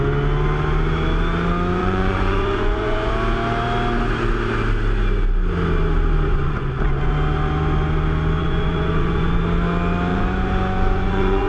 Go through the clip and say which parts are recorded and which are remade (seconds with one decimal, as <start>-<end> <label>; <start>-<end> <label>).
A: 0.0-1.8 recorded; 1.8-3.1 remade; 3.1-6.3 recorded; 6.3-7.1 remade; 7.1-8.4 recorded; 8.4-9.4 remade; 9.4-10.1 recorded; 10.1-11.5 remade